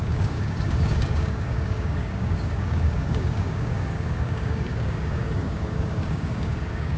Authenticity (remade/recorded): remade